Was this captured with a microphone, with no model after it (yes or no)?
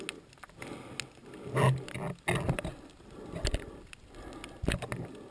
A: yes